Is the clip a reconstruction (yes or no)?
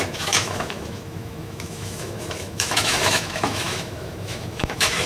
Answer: yes